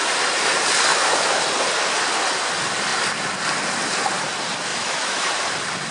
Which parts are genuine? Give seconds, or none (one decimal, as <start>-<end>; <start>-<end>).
0.0-0.9; 1.4-4.7; 5.3-5.9